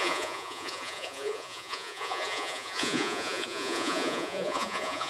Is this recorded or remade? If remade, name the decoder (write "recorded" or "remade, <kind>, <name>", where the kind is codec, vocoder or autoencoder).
remade, vocoder, Vocos